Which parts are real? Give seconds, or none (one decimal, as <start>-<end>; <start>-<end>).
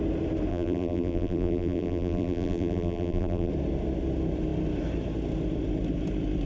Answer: 0.0-0.5; 3.5-6.5